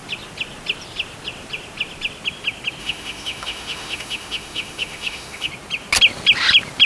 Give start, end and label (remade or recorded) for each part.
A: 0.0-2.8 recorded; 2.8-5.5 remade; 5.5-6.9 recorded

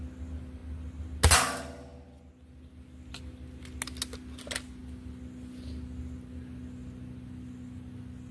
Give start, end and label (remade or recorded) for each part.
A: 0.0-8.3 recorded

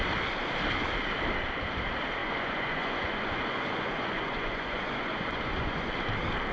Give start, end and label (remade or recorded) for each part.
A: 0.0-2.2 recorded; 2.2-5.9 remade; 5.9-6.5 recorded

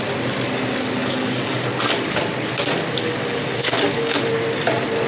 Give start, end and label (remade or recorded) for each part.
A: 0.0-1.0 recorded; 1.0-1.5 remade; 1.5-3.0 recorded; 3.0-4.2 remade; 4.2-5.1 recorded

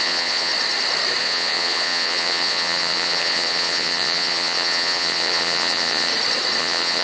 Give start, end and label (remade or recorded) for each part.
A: 0.0-0.5 remade; 0.5-1.2 recorded; 1.2-6.1 remade; 6.1-6.6 recorded; 6.6-7.0 remade

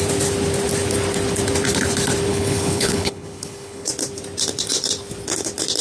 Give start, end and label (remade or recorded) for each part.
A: 0.0-2.3 recorded; 2.3-3.9 remade; 3.9-5.8 recorded